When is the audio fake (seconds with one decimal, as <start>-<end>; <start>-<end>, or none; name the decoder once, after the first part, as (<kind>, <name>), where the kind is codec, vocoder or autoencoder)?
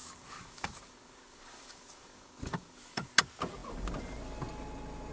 0.0-3.1 (codec, DAC)